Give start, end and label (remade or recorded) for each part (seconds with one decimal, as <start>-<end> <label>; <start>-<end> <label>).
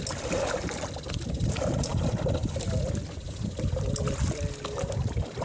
0.0-5.4 recorded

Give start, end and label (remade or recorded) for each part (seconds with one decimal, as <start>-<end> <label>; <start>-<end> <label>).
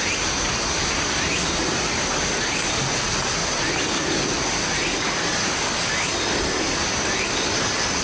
0.0-8.0 recorded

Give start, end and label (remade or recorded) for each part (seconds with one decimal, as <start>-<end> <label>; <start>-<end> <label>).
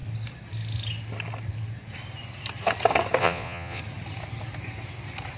0.0-3.2 recorded; 3.2-3.8 remade; 3.8-5.4 recorded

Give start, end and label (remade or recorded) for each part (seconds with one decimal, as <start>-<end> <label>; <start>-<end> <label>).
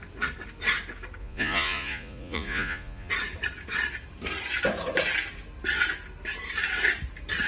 0.0-1.2 recorded; 1.2-3.1 remade; 3.1-7.5 recorded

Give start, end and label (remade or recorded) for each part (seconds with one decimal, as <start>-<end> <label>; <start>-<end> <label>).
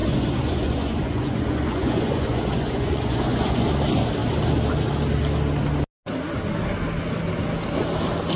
0.0-3.7 remade; 3.7-8.4 recorded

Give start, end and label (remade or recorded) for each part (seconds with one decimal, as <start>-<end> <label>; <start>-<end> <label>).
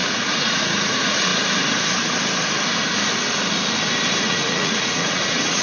0.0-1.3 remade; 1.3-4.2 recorded; 4.2-5.6 remade